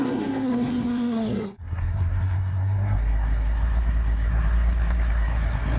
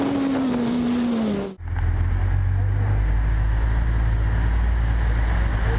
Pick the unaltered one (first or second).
second